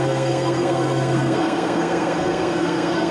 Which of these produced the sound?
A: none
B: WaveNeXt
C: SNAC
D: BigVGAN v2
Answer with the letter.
C